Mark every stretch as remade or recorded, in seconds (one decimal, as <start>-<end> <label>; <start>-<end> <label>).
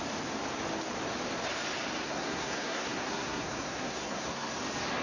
0.0-2.0 recorded; 2.0-4.5 remade; 4.5-5.0 recorded